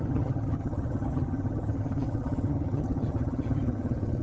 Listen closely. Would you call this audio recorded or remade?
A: remade